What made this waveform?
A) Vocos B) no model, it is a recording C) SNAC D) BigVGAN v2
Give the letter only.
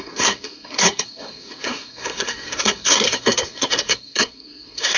C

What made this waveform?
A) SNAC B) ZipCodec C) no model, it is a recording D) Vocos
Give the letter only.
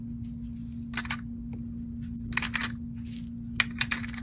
C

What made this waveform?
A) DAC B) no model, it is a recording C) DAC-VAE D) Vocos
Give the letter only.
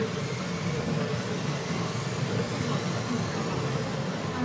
B